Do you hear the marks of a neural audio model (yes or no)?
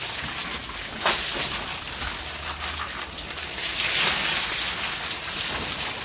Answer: no